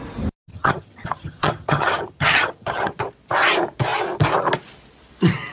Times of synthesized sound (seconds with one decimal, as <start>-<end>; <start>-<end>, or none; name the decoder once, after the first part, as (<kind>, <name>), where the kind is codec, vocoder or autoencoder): 0.5-2.9 (vocoder, HiFi-GAN)